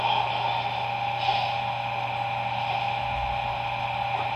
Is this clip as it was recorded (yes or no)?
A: yes